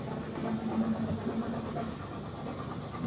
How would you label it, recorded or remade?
recorded